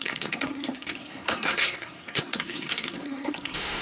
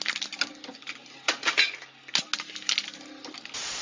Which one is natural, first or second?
second